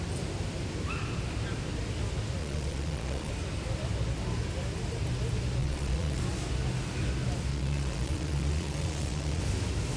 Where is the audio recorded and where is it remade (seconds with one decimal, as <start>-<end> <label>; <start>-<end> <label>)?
0.0-2.4 recorded; 2.4-3.3 remade; 3.3-5.6 recorded; 5.6-6.2 remade; 6.2-7.5 recorded; 7.5-9.4 remade; 9.4-10.0 recorded